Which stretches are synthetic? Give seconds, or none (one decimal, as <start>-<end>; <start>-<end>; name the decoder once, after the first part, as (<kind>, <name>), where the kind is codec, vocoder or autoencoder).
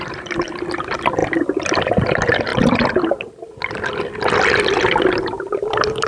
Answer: 2.5-3.4 (vocoder, BigVGAN v2)